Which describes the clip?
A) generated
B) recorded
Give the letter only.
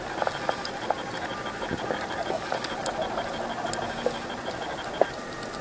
B